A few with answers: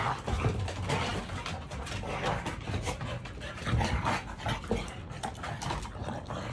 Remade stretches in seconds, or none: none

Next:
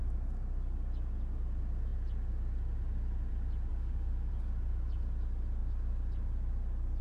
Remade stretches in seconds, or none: 3.7-4.3 (codec, DAC)